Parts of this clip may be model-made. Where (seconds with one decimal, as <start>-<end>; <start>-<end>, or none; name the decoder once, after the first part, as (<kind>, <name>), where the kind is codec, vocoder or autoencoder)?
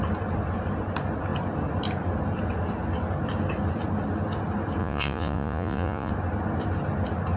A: 4.8-6.1 (vocoder, Vocos)